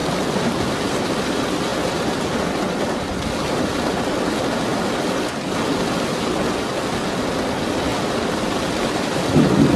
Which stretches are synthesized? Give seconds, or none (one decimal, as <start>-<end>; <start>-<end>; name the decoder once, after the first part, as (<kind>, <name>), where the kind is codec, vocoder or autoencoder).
7.9-9.8 (vocoder, BigVGAN v2)